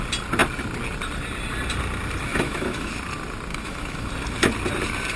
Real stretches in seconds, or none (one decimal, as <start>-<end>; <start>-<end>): 0.0-2.3; 2.9-3.5; 4.1-5.2